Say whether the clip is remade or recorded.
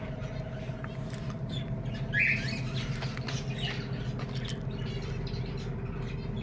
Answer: recorded